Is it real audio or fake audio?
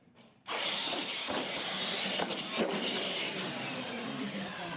fake